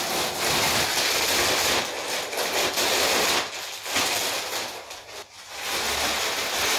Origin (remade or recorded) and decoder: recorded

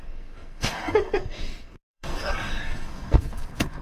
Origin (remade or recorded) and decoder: remade, codec, SNAC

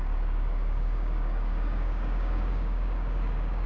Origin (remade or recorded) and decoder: remade, codec, DAC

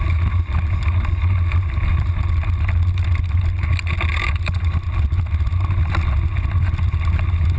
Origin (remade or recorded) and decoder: recorded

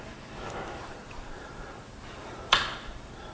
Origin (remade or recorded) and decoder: remade, vocoder, BigVGAN v2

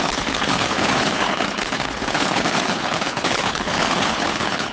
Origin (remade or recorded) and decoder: remade, codec, HILCodec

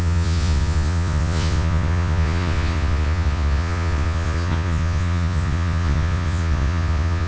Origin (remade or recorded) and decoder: remade, vocoder, Vocos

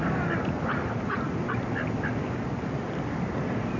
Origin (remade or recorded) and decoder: recorded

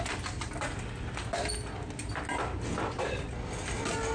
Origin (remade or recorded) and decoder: recorded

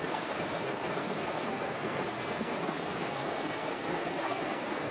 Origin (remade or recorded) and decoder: remade, codec, SNAC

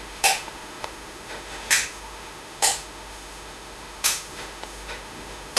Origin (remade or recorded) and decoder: remade, autoencoder, DAC-VAE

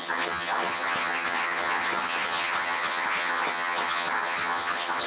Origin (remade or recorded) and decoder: remade, vocoder, HiFi-GAN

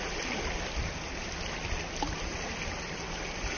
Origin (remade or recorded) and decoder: recorded